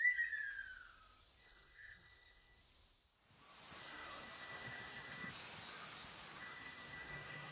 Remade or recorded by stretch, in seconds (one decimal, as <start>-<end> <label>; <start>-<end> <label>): 0.0-1.4 recorded; 1.4-2.6 remade; 2.6-3.8 recorded; 3.8-5.3 remade; 5.3-6.4 recorded; 6.4-7.5 remade